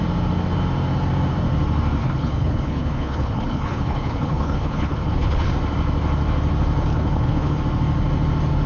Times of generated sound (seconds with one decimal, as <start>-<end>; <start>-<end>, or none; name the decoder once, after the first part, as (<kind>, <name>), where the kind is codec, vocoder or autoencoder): 2.0-5.5 (codec, HILCodec); 6.9-7.6